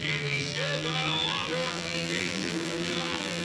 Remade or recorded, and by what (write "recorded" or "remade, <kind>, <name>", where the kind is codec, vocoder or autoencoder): remade, vocoder, BigVGAN v2